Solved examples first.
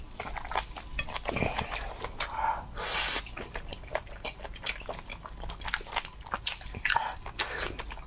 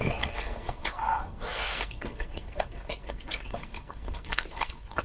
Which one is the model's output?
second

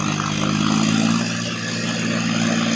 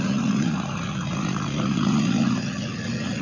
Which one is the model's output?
second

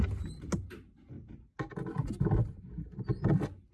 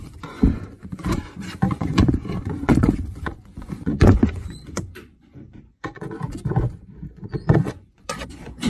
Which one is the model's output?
second